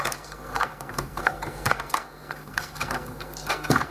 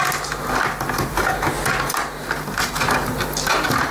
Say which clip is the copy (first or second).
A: first